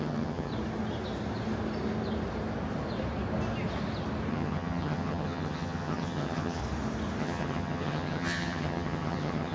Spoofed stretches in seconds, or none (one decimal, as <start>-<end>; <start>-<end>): 0.0-0.5; 4.3-6.6; 7.2-9.5